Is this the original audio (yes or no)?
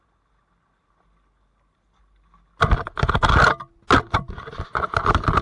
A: yes